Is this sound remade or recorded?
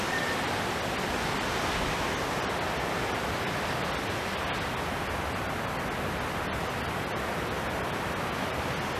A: recorded